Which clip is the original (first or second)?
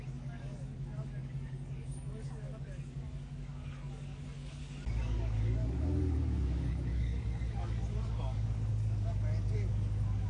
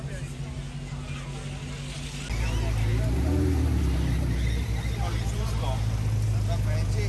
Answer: second